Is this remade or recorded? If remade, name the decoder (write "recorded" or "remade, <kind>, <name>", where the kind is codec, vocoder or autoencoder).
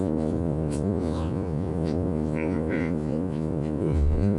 remade, vocoder, Vocos